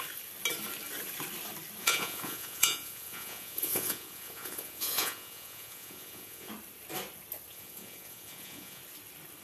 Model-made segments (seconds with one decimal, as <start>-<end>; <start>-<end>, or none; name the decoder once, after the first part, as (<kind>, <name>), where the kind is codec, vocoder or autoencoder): 1.8-6.5 (vocoder, Vocos); 7.5-8.8